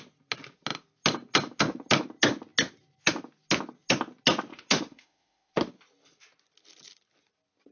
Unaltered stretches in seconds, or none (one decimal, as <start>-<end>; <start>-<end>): 0.0-4.5; 5.5-7.7